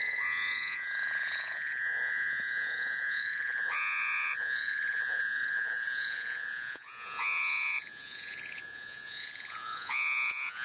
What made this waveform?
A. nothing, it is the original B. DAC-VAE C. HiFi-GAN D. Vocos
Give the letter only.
D